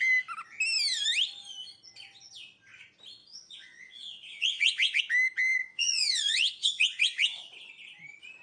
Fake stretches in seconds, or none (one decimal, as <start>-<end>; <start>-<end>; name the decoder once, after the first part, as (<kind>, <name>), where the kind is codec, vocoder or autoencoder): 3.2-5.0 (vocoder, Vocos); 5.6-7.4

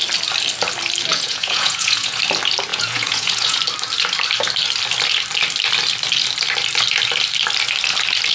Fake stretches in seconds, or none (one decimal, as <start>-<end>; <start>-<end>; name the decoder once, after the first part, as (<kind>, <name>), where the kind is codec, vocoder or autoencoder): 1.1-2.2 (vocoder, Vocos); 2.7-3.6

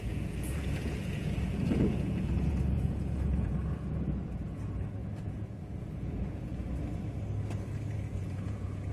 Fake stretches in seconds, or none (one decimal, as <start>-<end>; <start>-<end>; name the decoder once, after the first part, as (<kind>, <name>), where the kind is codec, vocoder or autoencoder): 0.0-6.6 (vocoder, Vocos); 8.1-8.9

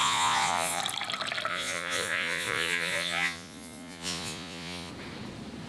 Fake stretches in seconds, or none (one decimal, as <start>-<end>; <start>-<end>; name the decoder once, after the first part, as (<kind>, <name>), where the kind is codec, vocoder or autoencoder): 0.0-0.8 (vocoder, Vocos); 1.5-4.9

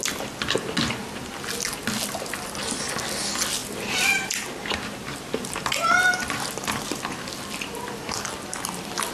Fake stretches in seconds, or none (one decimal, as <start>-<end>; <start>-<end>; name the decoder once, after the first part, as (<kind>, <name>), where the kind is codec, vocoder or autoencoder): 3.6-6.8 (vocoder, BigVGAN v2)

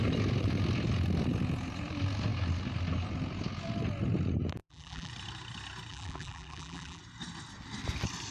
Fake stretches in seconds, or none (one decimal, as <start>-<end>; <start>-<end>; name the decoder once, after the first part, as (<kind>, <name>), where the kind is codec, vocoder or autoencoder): 4.6-5.1 (vocoder, BigVGAN v2); 5.9-7.0

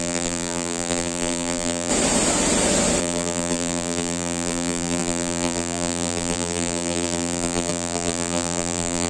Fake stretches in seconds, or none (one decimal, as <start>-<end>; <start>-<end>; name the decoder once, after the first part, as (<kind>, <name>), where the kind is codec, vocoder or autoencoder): 0.0-1.9 (vocoder, BigVGAN v2); 3.0-9.1